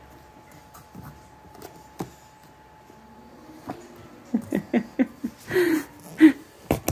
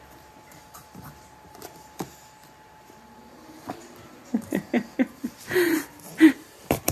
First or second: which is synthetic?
second